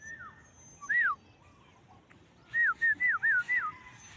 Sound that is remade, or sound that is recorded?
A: recorded